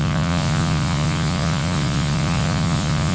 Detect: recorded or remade remade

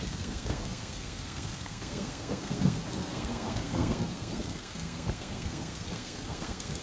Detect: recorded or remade remade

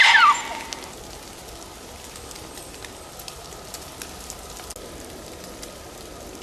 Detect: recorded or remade recorded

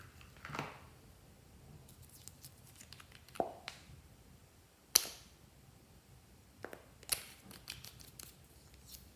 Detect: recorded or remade recorded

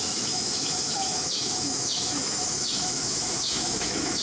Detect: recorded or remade remade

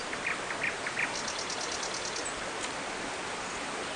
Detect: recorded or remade recorded